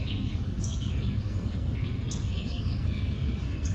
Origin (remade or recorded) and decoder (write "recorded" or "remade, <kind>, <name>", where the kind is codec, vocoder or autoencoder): remade, codec, SNAC